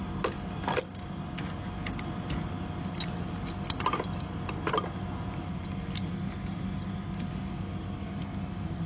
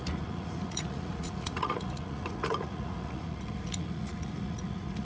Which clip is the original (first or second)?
first